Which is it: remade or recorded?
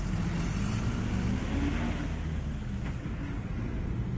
recorded